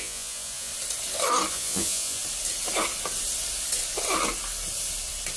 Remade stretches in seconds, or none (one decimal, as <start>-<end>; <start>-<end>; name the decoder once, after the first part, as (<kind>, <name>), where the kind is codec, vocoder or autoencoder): 0.0-0.7 (vocoder, Vocos); 1.5-2.2